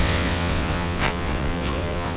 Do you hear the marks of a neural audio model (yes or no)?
yes